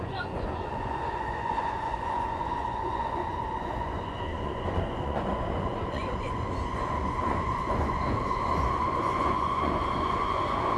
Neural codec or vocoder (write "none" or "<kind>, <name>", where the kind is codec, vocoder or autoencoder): vocoder, Vocos